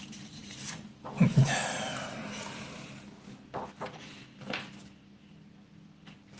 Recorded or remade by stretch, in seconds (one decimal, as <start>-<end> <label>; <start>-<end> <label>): 0.0-6.4 recorded